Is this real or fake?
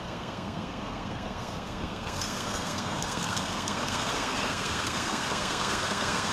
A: fake